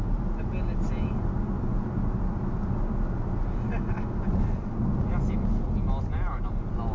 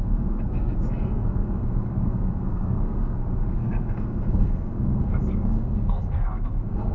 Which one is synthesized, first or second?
second